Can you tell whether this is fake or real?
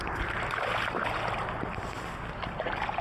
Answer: real